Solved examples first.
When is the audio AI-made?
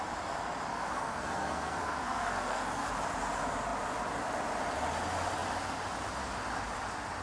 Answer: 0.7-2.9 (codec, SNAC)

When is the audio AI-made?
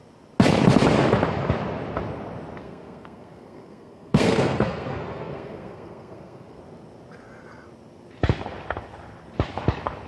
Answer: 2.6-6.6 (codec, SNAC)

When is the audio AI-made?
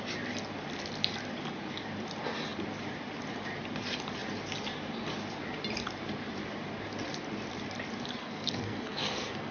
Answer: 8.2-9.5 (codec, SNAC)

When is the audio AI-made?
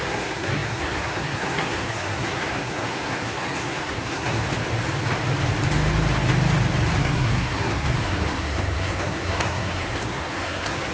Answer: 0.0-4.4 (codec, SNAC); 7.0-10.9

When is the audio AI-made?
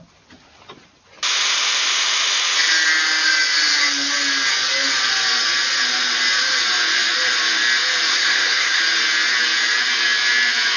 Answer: 8.1-8.8 (codec, SNAC)